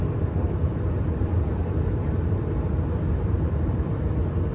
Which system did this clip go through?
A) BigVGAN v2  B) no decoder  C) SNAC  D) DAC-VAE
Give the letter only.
A